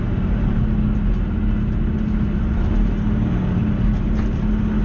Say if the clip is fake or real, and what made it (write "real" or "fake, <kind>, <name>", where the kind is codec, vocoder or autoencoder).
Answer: real